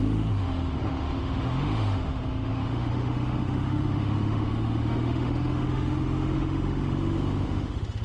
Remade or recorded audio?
remade